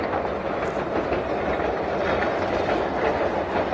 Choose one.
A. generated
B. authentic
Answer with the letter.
B